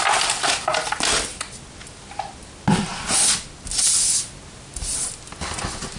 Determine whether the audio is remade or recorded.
recorded